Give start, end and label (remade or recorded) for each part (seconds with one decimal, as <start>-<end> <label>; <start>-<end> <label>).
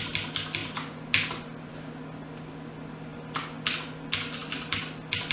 0.0-5.3 recorded